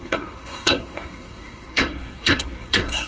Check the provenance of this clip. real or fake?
fake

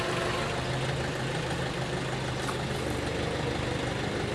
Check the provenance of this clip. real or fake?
real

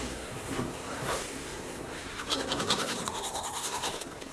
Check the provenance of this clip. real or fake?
fake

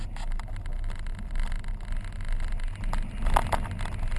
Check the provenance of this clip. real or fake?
real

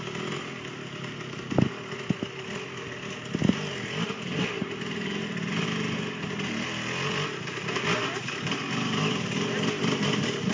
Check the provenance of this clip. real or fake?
real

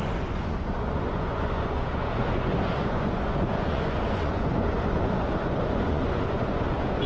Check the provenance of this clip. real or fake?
fake